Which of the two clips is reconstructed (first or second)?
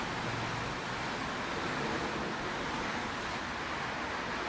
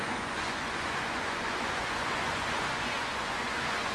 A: second